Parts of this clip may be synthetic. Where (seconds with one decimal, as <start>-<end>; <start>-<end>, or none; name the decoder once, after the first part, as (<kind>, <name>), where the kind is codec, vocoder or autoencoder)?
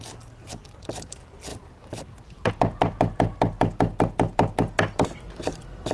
1.5-2.5 (vocoder, BigVGAN v2)